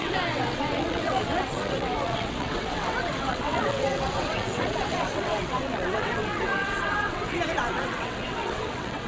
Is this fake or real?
fake